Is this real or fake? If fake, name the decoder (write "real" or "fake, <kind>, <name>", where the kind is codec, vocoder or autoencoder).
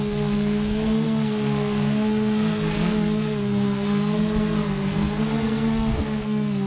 fake, codec, SNAC